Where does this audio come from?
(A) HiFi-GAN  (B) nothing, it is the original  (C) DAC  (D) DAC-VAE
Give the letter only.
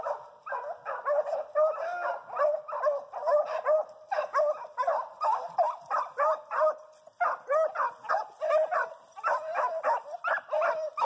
B